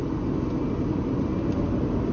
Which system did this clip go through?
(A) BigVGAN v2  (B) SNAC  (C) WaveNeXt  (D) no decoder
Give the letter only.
D